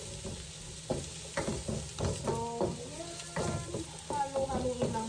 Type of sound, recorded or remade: recorded